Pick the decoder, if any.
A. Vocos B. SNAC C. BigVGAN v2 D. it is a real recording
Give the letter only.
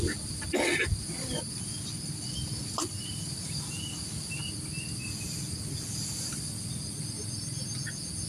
D